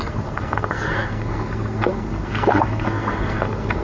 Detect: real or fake fake